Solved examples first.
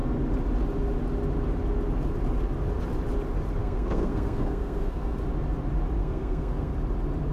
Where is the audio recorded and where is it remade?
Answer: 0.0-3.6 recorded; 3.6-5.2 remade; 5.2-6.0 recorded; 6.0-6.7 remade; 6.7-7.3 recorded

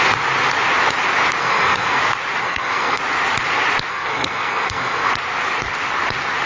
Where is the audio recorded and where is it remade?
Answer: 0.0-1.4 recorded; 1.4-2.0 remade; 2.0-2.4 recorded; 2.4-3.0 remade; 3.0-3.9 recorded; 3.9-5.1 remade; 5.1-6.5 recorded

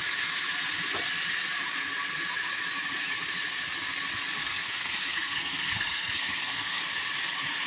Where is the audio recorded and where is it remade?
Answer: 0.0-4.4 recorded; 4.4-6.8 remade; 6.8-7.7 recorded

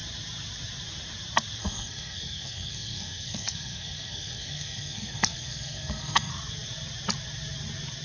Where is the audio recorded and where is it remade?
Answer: 0.0-1.6 recorded; 1.6-6.3 remade; 6.3-8.0 recorded

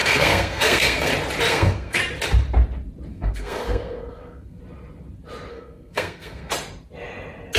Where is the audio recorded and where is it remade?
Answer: 0.0-1.1 remade; 1.1-1.5 recorded; 1.5-2.0 remade; 2.0-3.1 recorded; 3.1-4.6 remade; 4.6-5.5 recorded; 5.5-6.5 remade; 6.5-7.6 recorded